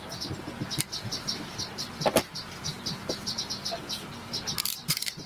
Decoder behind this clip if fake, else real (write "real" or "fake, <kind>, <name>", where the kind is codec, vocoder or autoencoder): fake, vocoder, BigVGAN v2